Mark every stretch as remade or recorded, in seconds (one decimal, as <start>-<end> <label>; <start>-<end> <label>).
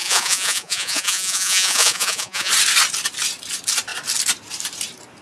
0.0-2.5 remade; 2.5-5.2 recorded